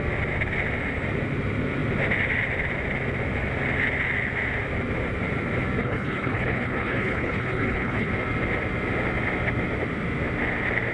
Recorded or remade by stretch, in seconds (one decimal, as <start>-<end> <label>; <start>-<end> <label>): 0.0-5.8 recorded; 5.8-8.1 remade; 8.1-10.9 recorded